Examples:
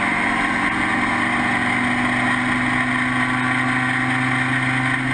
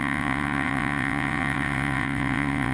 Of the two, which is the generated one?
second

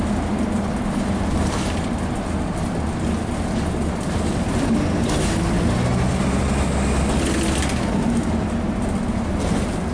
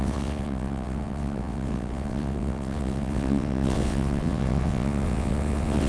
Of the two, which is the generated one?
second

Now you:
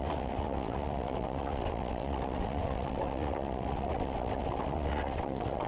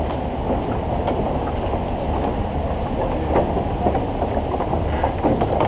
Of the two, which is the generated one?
first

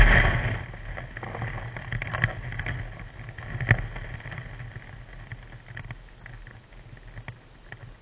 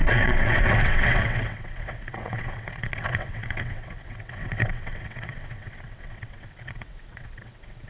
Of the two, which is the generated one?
second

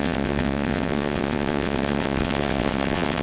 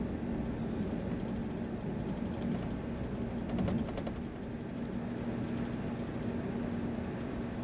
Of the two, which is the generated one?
first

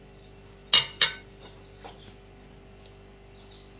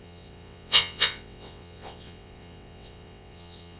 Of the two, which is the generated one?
second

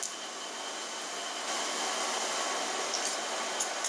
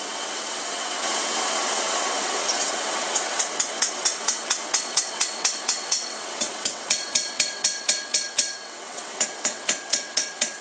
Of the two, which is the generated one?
second